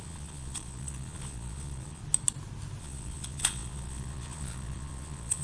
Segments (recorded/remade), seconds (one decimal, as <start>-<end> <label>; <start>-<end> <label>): 0.0-2.0 remade; 2.0-2.8 recorded; 2.8-5.4 remade